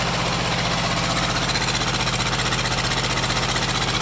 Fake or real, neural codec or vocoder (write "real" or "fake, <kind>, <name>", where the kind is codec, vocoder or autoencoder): real